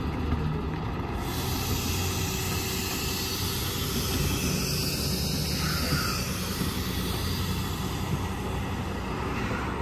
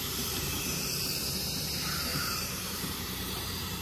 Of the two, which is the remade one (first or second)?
second